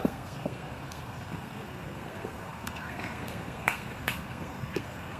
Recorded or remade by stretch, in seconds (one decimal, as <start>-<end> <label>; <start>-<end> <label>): 0.0-5.2 remade

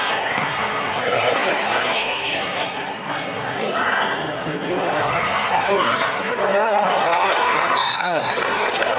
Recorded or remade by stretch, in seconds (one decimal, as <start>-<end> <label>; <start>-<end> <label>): 0.0-9.0 remade

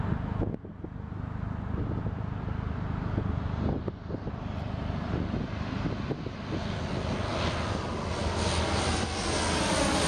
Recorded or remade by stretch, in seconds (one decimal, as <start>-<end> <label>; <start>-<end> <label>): 0.0-10.1 recorded

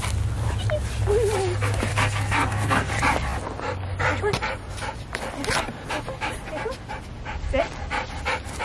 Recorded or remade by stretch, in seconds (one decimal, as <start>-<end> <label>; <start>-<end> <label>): 0.0-1.9 recorded; 1.9-2.9 remade; 2.9-8.6 recorded

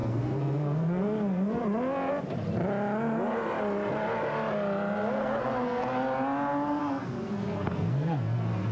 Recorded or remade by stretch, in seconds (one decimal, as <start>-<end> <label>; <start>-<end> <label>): 0.0-1.6 remade; 1.6-5.2 recorded; 5.2-5.8 remade; 5.8-6.8 recorded; 6.8-8.7 remade

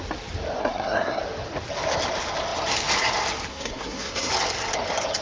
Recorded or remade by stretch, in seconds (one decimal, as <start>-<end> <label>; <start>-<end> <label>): 0.0-0.6 recorded; 0.6-1.2 remade; 1.2-3.5 recorded; 3.5-4.3 remade; 4.3-5.2 recorded

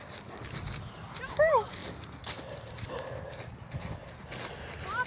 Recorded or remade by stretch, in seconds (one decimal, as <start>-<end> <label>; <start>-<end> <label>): 0.0-5.1 recorded

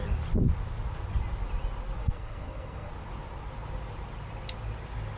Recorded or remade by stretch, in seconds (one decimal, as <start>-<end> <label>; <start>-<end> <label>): 0.0-2.0 recorded; 2.0-2.9 remade; 2.9-5.2 recorded